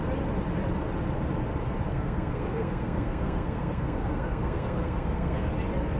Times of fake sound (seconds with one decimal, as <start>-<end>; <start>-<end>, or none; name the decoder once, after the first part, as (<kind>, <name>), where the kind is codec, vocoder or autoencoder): 1.9-5.5 (codec, SNAC)